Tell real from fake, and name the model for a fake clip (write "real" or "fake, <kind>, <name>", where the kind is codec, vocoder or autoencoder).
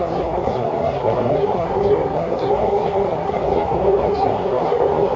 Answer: fake, codec, SNAC